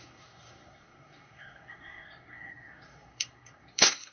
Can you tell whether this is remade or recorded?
remade